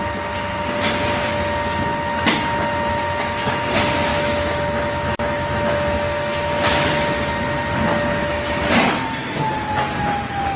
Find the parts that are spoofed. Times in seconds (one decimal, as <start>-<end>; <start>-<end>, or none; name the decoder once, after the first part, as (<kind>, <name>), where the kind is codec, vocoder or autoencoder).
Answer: 4.1-6.9 (autoencoder, DAC-VAE)